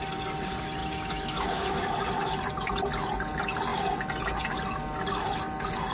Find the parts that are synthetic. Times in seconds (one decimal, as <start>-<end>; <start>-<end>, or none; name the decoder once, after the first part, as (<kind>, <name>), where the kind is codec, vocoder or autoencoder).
0.8-1.8 (autoencoder, DAC-VAE)